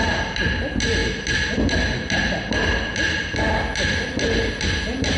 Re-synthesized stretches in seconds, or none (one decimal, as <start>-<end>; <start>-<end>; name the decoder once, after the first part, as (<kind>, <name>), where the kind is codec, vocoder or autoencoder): none